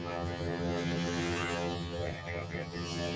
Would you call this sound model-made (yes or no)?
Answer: yes